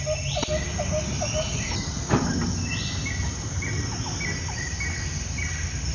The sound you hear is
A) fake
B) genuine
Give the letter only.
B